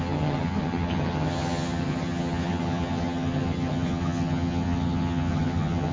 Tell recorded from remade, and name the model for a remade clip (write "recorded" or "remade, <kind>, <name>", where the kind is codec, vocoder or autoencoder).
remade, vocoder, HiFi-GAN